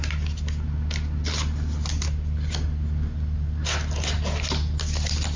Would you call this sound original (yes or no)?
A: yes